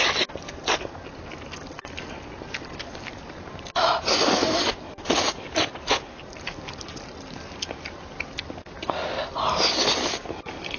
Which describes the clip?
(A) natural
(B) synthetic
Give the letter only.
A